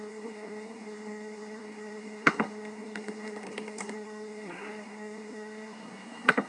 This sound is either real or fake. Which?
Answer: fake